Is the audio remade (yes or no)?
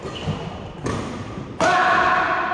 no